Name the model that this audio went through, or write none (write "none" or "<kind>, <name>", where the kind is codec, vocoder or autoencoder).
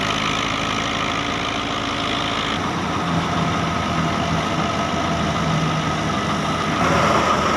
none